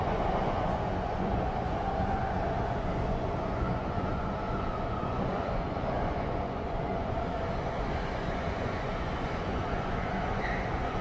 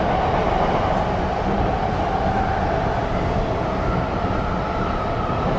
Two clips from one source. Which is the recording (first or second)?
second